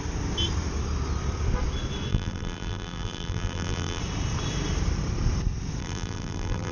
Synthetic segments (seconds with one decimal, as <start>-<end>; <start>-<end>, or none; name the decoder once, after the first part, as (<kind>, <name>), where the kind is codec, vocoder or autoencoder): 2.1-4.0 (vocoder, BigVGAN v2); 5.8-6.7